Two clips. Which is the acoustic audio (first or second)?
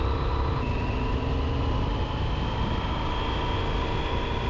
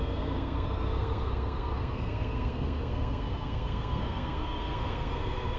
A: first